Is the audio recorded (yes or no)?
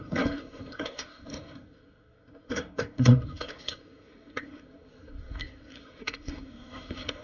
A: no